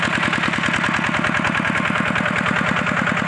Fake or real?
real